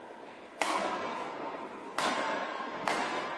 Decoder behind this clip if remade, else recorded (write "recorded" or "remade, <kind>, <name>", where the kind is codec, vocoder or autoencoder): remade, codec, SNAC